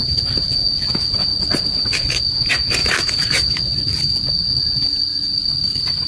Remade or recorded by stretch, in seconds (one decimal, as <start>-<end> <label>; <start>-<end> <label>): 0.0-1.3 recorded; 1.3-2.2 remade; 2.2-2.8 recorded; 2.8-4.0 remade; 4.0-5.1 recorded; 5.1-6.1 remade